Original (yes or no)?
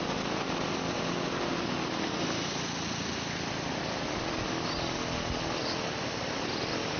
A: yes